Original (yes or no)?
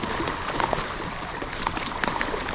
yes